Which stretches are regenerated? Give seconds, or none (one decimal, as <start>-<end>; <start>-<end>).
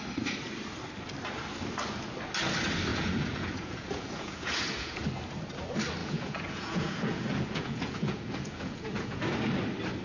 2.9-5.0; 6.0-9.2